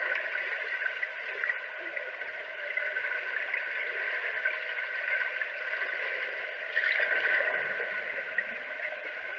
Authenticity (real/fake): real